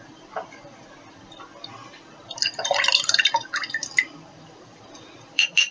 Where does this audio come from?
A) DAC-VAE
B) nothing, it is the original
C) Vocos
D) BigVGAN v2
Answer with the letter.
D